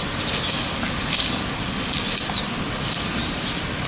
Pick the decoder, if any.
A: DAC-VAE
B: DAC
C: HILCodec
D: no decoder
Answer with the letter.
D